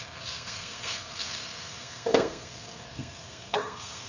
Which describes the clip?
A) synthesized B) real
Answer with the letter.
A